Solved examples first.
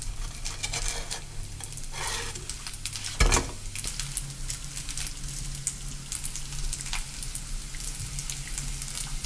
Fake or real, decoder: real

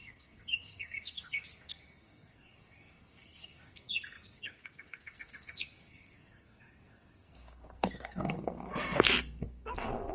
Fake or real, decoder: fake, codec, SNAC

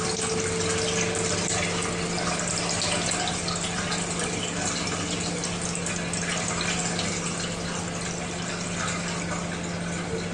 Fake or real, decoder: real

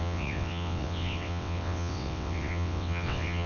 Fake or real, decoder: fake, vocoder, WaveNeXt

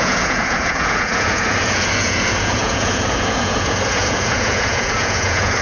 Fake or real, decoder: fake, vocoder, Vocos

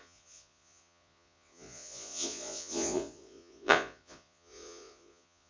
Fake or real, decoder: fake, vocoder, Vocos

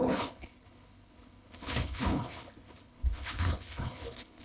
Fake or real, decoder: fake, codec, HILCodec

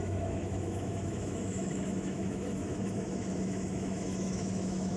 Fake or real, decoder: fake, autoencoder, DAC-VAE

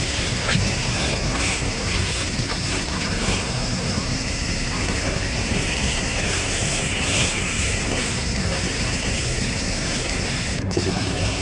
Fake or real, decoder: fake, codec, SNAC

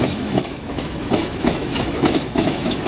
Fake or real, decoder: fake, autoencoder, DAC-VAE